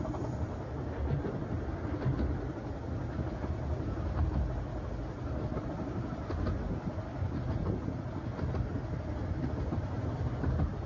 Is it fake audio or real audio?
real